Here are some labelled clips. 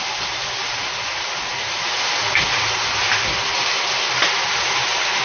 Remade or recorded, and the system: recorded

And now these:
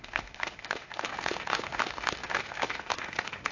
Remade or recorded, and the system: remade, autoencoder, DAC-VAE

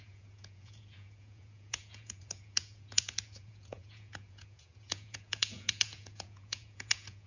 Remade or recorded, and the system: remade, vocoder, Vocos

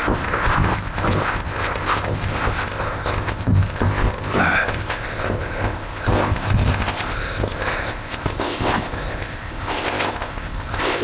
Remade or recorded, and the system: remade, codec, ZipCodec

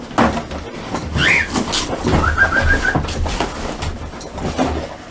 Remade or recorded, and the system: recorded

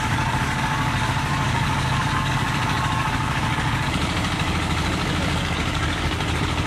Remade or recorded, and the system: remade, codec, DAC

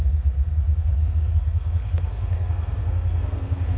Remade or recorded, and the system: remade, codec, SNAC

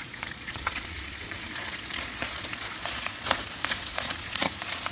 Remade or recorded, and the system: remade, vocoder, Vocos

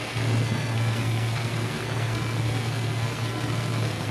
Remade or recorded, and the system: remade, codec, SNAC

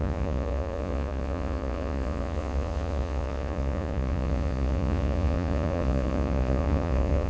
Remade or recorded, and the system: remade, vocoder, Vocos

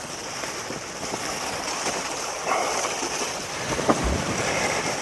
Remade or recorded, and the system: recorded